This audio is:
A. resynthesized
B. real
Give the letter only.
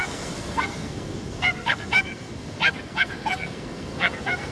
A